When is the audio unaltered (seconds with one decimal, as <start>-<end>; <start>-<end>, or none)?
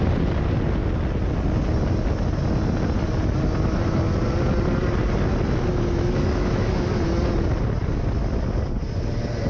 0.0-5.7; 7.1-9.5